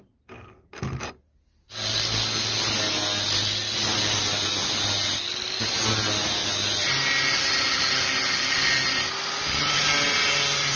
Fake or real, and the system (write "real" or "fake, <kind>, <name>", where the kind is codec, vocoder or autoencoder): real